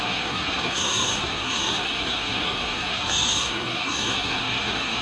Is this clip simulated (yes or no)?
yes